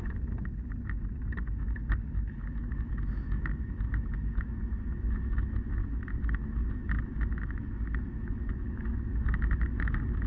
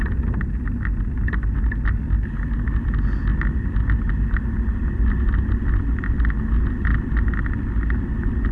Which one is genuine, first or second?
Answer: second